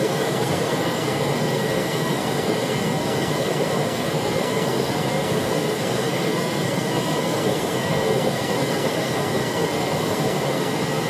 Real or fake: fake